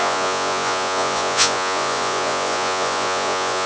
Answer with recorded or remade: remade